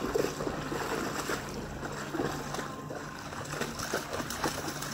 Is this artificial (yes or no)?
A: no